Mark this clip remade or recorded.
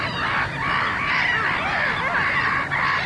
recorded